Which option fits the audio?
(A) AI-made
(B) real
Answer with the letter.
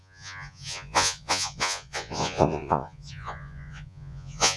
A